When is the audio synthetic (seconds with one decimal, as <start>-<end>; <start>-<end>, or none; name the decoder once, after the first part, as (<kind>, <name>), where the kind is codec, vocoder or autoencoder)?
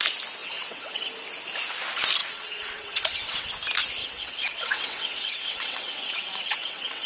0.4-1.1 (vocoder, WaveNeXt); 2.2-3.5; 4.0-7.1